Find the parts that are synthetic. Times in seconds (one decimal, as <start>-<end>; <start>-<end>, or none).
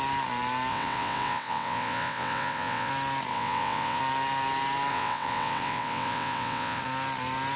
0.7-2.9; 3.3-4.0; 4.9-6.8